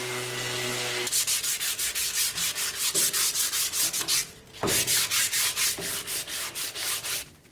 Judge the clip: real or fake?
real